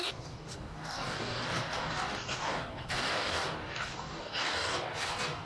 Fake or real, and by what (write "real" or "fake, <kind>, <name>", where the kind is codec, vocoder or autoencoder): fake, codec, DAC